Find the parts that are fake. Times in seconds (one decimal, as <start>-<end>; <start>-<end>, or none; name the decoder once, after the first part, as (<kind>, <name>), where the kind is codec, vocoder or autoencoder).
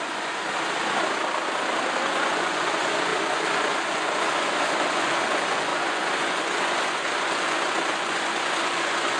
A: 0.0-0.4 (vocoder, Vocos); 2.0-9.2